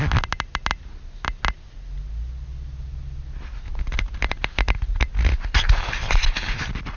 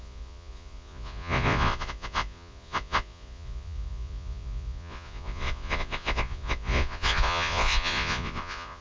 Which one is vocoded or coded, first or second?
second